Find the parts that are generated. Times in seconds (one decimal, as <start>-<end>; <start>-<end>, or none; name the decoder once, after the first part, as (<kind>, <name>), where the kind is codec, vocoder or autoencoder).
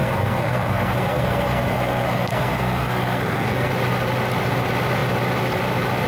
0.0-3.7 (codec, SNAC)